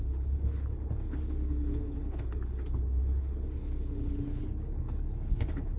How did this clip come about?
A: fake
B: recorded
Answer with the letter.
A